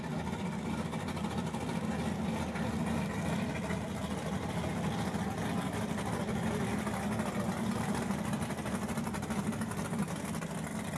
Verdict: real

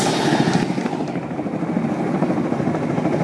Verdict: real